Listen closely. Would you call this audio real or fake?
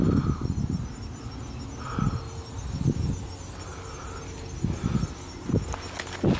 real